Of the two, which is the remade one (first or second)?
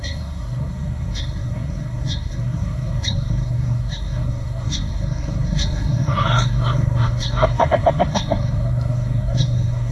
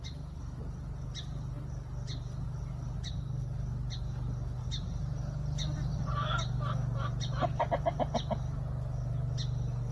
first